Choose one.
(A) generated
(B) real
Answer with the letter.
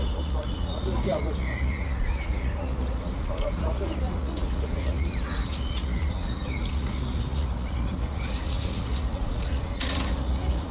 A